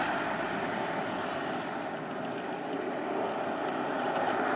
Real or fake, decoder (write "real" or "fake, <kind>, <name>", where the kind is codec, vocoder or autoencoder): real